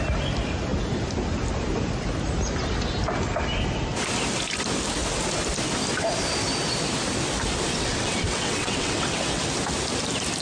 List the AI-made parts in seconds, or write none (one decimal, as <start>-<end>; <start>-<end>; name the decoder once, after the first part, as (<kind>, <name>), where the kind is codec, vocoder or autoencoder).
7.7-9.4 (vocoder, WaveNeXt)